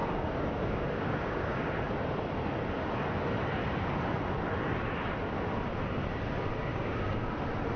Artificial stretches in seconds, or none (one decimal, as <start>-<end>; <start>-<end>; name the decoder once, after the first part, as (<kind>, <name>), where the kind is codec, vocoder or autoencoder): 0.0-1.7 (codec, DAC); 6.7-7.3